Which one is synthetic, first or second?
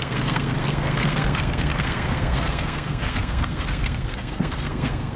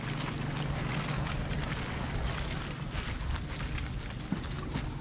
first